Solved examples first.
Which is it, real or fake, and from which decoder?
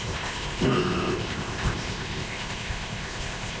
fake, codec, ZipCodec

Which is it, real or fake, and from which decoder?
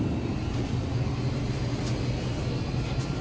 real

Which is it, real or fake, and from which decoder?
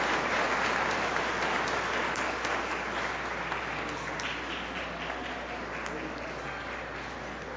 real